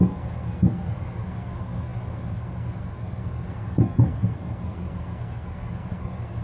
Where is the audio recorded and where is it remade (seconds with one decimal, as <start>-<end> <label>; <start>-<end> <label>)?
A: 0.0-6.4 remade